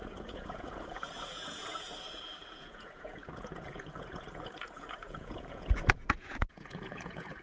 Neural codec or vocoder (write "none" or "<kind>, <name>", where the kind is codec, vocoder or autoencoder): vocoder, Vocos